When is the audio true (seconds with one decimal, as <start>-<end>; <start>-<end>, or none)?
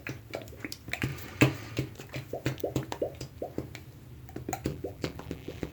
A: 0.0-4.7